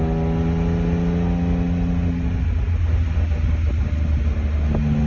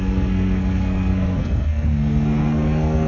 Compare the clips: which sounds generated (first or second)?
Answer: second